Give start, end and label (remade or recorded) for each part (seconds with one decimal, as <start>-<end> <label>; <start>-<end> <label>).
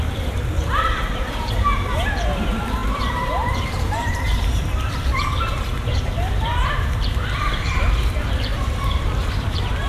0.0-9.9 remade